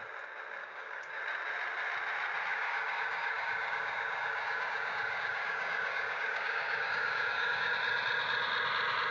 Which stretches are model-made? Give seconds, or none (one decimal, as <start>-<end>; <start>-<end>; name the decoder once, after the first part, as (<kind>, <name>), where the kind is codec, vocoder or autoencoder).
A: 0.6-1.2 (codec, DAC); 2.5-7.7